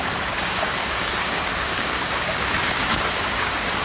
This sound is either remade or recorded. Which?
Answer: remade